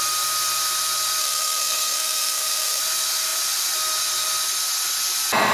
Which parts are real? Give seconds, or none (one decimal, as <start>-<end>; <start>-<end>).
0.0-1.2; 2.8-5.5